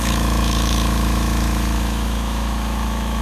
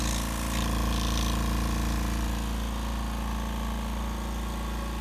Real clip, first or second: second